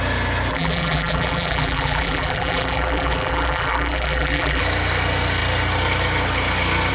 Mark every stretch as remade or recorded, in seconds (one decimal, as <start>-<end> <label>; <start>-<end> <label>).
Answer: 0.0-0.5 recorded; 0.5-4.6 remade; 4.6-6.9 recorded